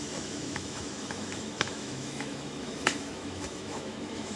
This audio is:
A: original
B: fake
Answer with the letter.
B